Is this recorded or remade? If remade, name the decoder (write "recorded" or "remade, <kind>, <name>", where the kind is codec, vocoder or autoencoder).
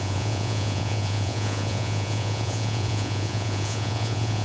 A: remade, vocoder, Vocos